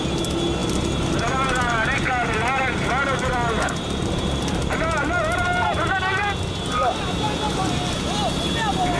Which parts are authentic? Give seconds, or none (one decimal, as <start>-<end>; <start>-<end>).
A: 0.0-9.0